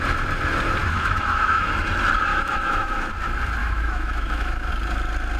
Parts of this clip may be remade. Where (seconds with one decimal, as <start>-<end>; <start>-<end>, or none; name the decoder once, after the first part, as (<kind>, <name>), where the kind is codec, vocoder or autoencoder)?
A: 0.8-1.7 (autoencoder, DAC-VAE); 2.3-3.1; 3.6-4.7